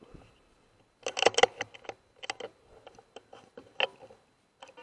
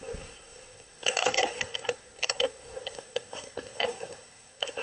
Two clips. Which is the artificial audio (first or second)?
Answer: second